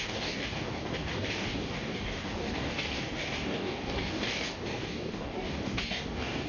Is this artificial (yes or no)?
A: yes